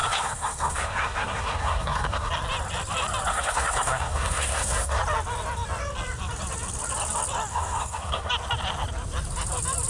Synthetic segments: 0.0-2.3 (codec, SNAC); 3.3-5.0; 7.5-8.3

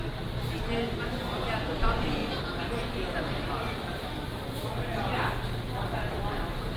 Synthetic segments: none

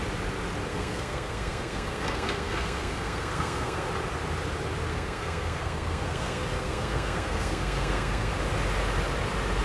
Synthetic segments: 0.7-3.9 (codec, SNAC); 4.9-8.3

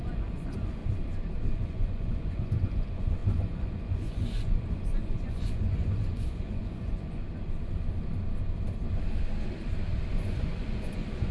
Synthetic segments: 0.0-0.8 (vocoder, Vocos); 1.5-7.2; 10.1-11.3

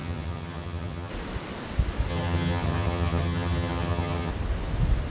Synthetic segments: 0.0-1.1 (vocoder, HiFi-GAN); 2.1-4.3

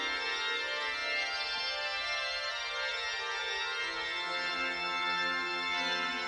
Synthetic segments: none

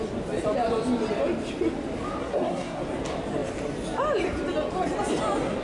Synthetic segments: 2.2-2.8 (codec, SNAC)

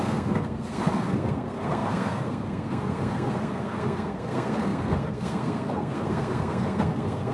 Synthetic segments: 0.0-7.3 (codec, SNAC)